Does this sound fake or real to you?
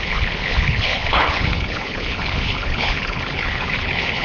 fake